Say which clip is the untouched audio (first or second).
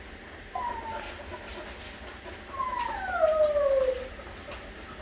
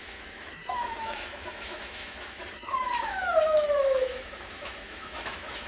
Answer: first